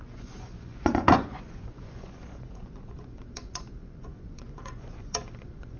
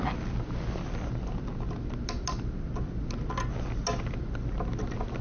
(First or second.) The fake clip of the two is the first